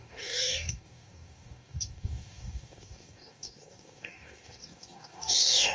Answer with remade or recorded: remade